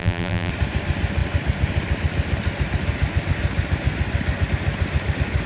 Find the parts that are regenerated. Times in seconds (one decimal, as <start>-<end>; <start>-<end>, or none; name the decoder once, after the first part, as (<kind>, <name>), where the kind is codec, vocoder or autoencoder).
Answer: 0.0-0.5 (vocoder, BigVGAN v2)